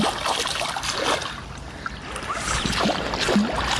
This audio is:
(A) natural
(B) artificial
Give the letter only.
A